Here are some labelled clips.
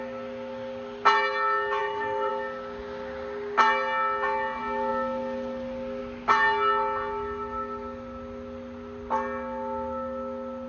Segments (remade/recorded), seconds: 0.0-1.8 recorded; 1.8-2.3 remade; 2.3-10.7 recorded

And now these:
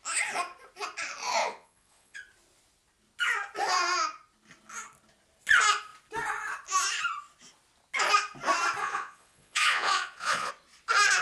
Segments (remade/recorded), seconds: 0.0-1.4 recorded; 1.4-2.2 remade; 2.2-8.8 recorded; 8.8-10.5 remade; 10.5-11.2 recorded